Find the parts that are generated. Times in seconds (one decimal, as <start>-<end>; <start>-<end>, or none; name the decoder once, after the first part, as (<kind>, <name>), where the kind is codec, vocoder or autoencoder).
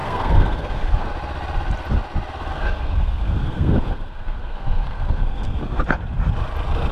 0.0-1.1 (codec, SNAC); 2.5-5.8